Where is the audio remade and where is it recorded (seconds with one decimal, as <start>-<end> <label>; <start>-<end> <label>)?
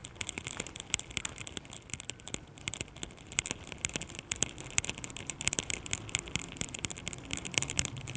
0.0-8.2 recorded